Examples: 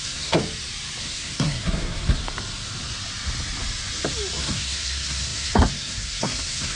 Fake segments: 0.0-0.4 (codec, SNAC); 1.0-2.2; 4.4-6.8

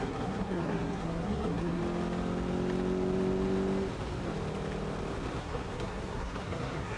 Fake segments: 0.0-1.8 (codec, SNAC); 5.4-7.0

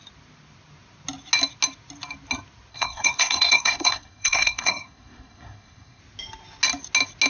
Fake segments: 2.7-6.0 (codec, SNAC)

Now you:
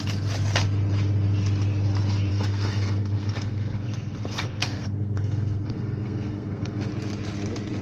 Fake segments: 2.3-6.9 (codec, SNAC)

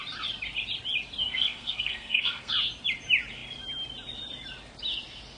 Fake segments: 1.2-2.5 (codec, SNAC)

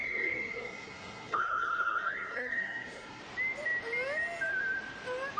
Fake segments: 0.0-3.2 (codec, SNAC)

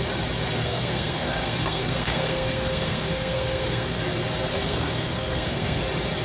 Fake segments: 0.6-4.0 (codec, SNAC); 4.5-5.8

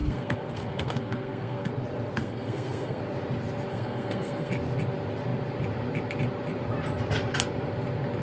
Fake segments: 0.0-1.7 (codec, SNAC); 2.2-3.0; 3.7-4.5